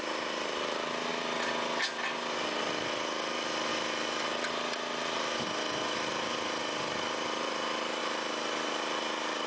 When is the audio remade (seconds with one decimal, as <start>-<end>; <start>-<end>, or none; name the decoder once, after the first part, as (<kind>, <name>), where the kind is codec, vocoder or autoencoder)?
none